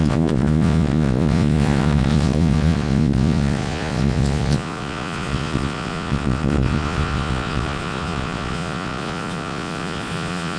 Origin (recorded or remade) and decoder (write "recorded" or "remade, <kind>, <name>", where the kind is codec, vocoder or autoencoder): remade, vocoder, Vocos